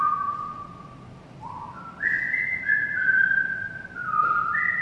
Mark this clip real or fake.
real